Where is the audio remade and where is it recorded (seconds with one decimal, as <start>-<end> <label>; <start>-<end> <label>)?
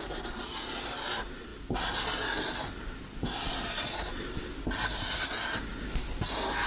0.0-6.7 recorded